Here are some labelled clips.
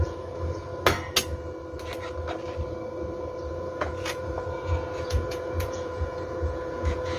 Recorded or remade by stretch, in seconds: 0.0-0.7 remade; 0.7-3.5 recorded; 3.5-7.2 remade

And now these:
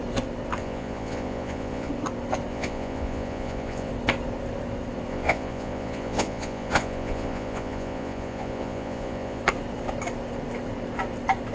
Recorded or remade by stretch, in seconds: 0.0-0.6 recorded; 0.6-1.9 remade; 1.9-2.5 recorded; 2.5-3.9 remade; 3.9-5.1 recorded; 5.1-9.4 remade; 9.4-11.5 recorded

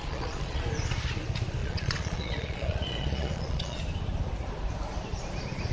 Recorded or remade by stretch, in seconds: 0.0-0.6 remade; 0.6-1.6 recorded; 1.6-3.8 remade; 3.8-5.7 recorded

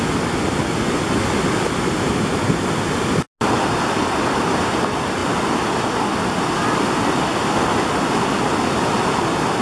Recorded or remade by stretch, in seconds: 0.0-9.6 recorded

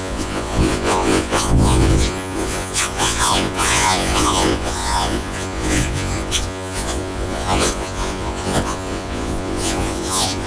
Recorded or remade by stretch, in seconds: 0.0-10.5 remade

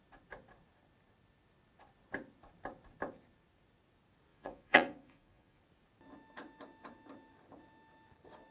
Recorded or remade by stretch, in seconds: 0.0-4.3 recorded; 4.3-5.6 remade; 5.6-8.5 recorded

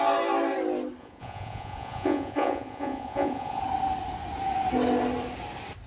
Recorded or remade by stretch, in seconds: 0.0-1.0 recorded; 1.0-3.6 remade; 3.6-5.9 recorded